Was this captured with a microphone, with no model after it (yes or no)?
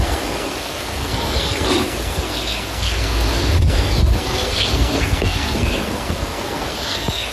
no